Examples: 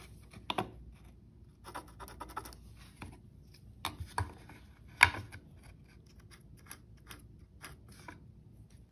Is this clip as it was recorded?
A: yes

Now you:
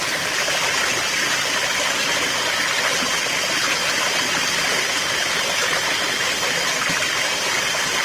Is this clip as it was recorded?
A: yes